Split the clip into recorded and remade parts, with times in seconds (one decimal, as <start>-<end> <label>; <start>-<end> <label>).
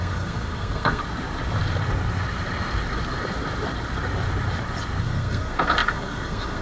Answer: 0.0-1.0 remade; 1.0-5.0 recorded; 5.0-6.6 remade